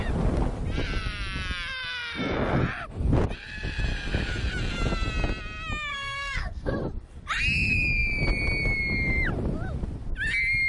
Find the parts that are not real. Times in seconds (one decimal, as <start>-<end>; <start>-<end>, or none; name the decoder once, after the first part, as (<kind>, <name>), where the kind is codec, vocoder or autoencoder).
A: 5.9-6.7 (codec, SNAC)